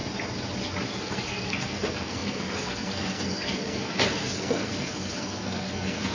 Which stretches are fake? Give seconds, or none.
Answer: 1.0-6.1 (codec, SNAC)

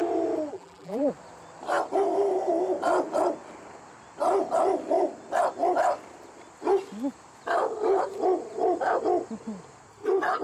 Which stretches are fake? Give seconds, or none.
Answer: 0.5-1.1 (vocoder, BigVGAN v2)

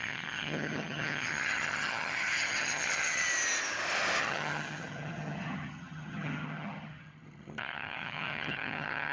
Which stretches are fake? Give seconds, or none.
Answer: 0.0-3.3 (vocoder, HiFi-GAN); 4.2-9.1

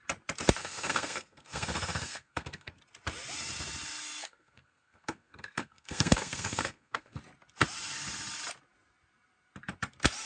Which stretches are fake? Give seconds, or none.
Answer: 0.6-2.8 (codec, SNAC); 4.2-7.2

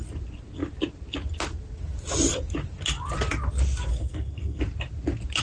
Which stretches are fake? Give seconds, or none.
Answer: 3.9-4.6 (codec, SNAC)